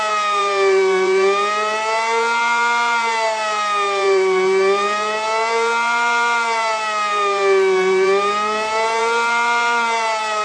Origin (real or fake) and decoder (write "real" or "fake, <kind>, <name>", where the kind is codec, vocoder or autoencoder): fake, vocoder, BigVGAN v2